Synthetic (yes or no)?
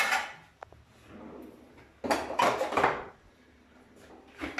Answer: no